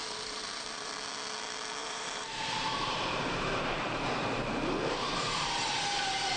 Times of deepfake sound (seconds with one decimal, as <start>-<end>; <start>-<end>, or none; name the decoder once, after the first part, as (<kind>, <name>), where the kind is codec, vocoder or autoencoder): 0.0-0.9 (vocoder, BigVGAN v2); 1.8-5.6